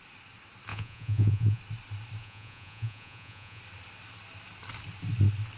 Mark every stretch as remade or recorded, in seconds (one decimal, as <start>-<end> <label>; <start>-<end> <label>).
0.0-0.7 recorded; 0.7-1.6 remade; 1.6-2.2 recorded; 2.2-3.6 remade; 3.6-5.6 recorded